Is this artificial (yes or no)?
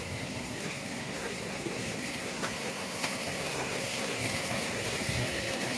yes